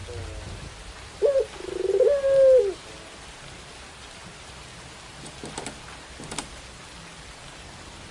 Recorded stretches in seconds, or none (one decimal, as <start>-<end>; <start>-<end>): 0.0-8.1